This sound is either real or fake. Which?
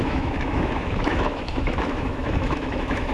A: fake